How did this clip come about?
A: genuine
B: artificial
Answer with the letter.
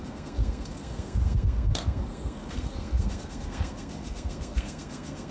B